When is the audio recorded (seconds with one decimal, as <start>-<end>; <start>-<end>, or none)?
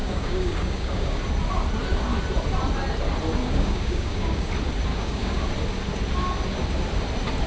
1.2-3.4; 4.5-4.9; 5.5-7.5